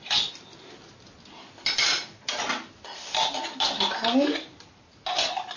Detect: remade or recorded recorded